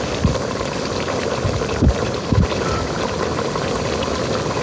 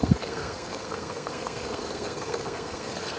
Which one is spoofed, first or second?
second